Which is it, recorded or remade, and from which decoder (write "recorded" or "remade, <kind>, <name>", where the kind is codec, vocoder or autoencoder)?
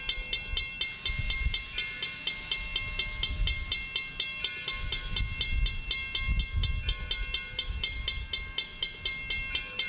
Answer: recorded